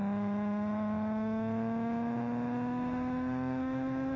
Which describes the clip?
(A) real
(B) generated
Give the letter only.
B